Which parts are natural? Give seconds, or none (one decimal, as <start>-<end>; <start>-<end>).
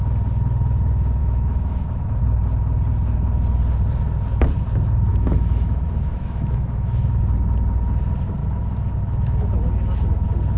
0.0-1.2; 2.2-5.1; 7.2-8.4; 8.9-10.6